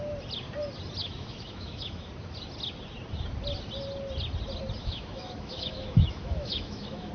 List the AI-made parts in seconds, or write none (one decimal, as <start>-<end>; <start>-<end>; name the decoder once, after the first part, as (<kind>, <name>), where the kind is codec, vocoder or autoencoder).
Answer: 1.0-2.1 (autoencoder, DAC-VAE); 4.8-7.1